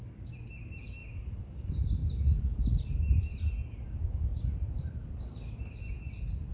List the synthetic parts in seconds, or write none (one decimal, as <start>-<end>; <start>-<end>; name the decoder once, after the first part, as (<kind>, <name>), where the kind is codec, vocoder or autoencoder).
none